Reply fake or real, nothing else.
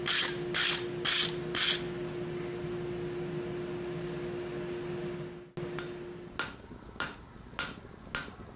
real